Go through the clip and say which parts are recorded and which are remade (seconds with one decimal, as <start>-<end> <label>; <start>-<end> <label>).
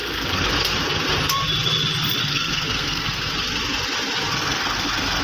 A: 0.0-0.5 remade; 0.5-2.2 recorded; 2.2-3.3 remade; 3.3-4.3 recorded; 4.3-5.2 remade